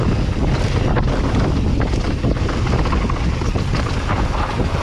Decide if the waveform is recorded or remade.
recorded